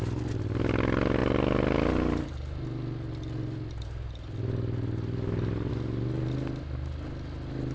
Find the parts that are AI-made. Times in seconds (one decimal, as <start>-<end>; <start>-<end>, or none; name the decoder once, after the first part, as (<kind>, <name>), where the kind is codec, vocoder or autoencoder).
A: none